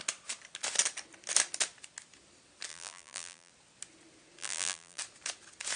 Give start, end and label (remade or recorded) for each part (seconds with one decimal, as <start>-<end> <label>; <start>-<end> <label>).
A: 0.0-2.7 recorded; 2.7-3.5 remade; 3.5-4.4 recorded; 4.4-5.0 remade; 5.0-5.8 recorded